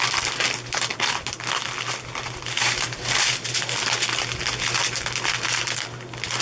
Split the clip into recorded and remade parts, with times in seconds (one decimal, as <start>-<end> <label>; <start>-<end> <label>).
0.0-6.4 recorded